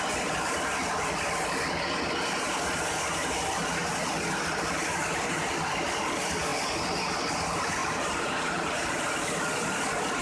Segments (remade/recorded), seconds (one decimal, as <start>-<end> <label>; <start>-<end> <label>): 0.0-7.8 recorded; 7.8-9.0 remade; 9.0-10.2 recorded